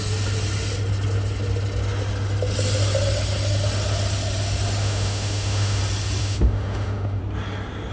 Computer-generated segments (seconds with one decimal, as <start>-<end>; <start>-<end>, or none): 4.8-5.8; 6.2-7.2